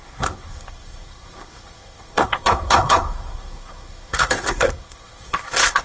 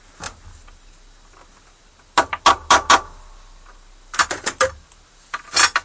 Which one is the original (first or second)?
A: second